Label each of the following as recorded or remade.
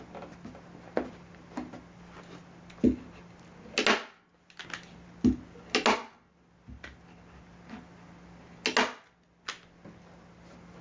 recorded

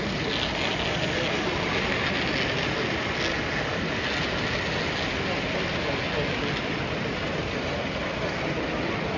recorded